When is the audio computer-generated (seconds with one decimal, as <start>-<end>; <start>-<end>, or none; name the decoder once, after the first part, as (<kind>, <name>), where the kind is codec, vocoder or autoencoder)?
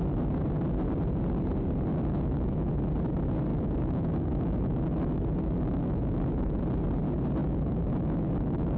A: 1.9-2.7 (autoencoder, DAC-VAE); 3.5-6.6; 7.4-8.8